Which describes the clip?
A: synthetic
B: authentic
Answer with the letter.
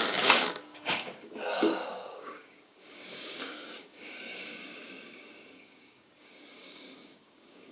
A